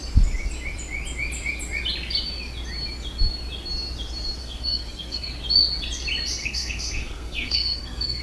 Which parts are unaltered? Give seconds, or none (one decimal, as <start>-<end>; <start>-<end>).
0.0-4.4; 5.3-6.4